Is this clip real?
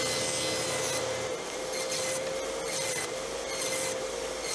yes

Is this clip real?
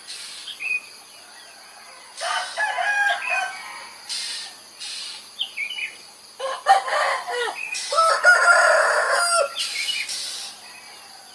yes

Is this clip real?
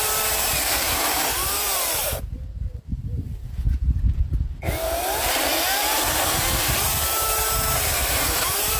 no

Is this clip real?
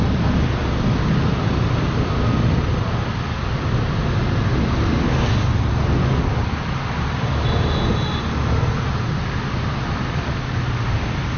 yes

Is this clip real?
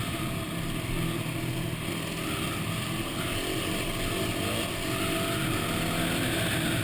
yes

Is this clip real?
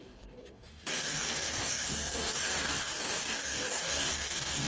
no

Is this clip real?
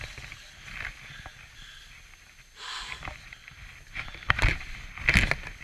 yes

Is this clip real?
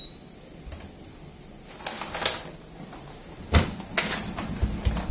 yes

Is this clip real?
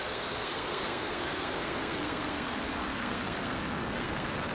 no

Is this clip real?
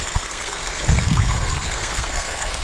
no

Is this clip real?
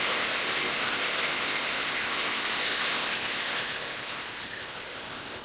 no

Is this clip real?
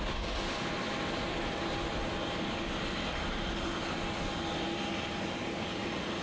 yes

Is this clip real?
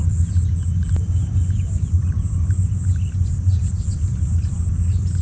yes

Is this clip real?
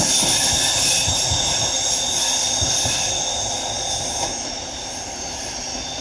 yes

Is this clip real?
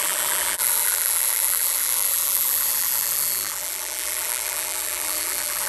no